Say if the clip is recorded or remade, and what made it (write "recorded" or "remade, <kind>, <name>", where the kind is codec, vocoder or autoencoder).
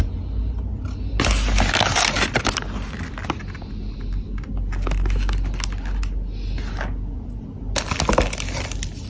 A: recorded